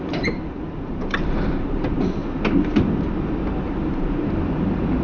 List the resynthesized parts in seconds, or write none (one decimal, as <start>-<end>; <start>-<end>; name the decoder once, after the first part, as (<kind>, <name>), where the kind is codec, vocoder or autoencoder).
0.0-2.2 (vocoder, BigVGAN v2); 3.6-5.0